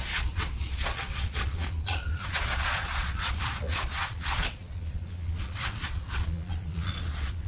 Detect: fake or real fake